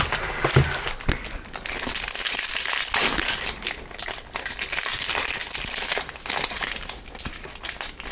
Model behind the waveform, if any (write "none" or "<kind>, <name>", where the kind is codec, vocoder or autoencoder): none